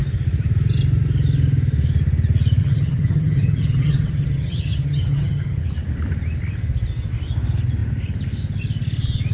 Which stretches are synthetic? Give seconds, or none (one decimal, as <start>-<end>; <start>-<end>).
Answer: 2.6-5.6